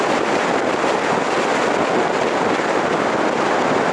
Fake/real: real